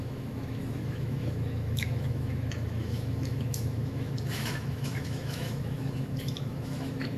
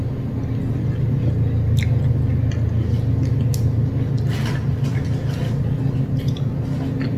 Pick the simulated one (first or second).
first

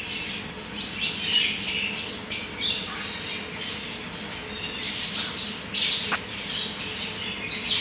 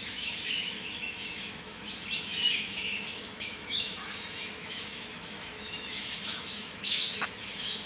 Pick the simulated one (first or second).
second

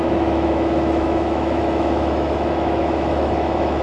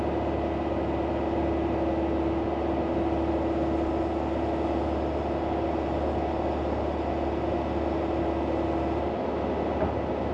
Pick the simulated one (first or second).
first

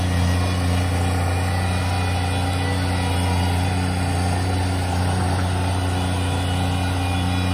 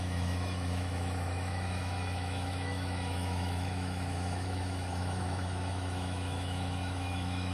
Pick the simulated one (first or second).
second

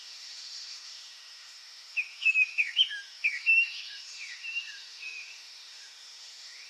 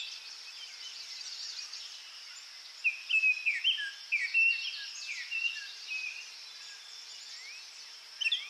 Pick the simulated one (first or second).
first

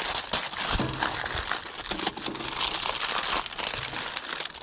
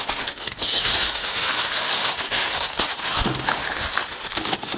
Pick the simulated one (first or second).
second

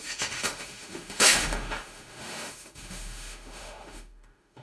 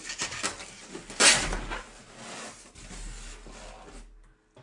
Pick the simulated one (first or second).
first